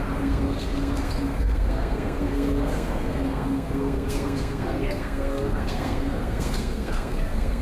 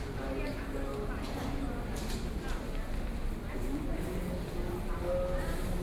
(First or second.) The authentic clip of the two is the second